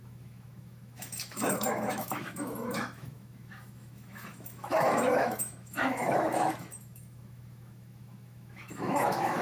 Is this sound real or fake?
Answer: fake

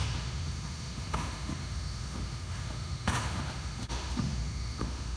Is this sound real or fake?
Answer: fake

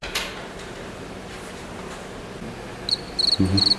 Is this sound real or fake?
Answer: real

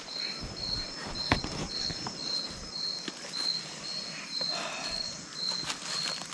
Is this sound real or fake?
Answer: real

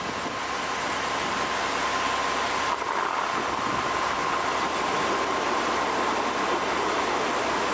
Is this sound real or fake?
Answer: real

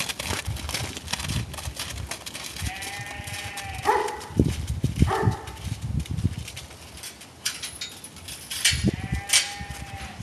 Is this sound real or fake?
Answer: real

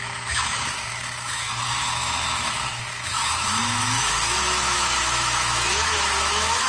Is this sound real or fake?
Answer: fake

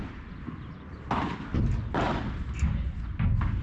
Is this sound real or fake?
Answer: real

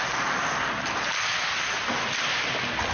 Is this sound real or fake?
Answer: real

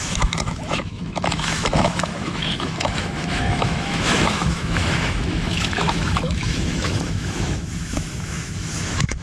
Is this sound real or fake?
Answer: fake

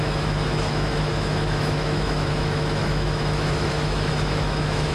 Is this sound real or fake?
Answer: fake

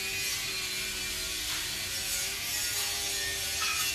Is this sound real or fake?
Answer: real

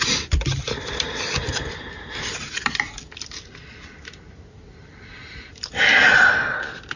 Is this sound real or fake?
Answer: real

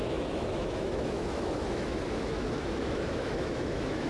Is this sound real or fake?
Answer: fake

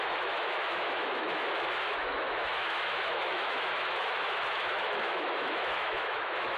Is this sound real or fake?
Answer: fake